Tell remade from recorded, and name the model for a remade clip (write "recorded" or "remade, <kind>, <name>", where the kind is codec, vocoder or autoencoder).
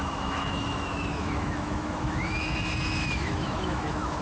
remade, autoencoder, DAC-VAE